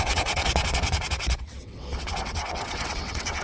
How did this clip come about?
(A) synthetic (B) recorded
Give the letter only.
A